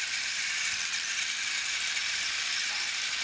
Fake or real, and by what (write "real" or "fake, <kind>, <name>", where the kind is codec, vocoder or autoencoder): real